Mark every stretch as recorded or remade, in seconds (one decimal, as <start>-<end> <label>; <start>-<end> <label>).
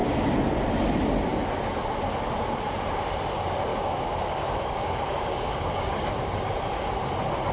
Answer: 0.0-3.7 recorded; 3.7-6.1 remade; 6.1-7.5 recorded